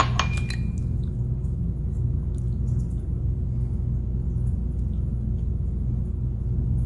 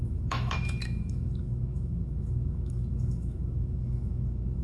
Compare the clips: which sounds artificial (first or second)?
second